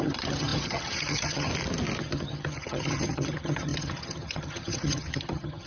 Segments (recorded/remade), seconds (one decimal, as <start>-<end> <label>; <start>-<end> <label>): 0.0-1.5 remade; 1.5-2.0 recorded; 2.0-5.7 remade